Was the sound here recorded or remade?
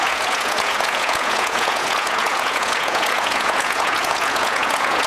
remade